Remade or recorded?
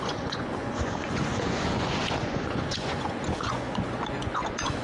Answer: remade